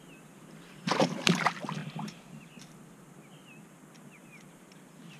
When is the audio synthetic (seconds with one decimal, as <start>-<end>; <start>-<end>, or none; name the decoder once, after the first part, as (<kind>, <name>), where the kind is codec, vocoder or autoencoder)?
0.0-1.8 (vocoder, BigVGAN v2); 3.9-5.2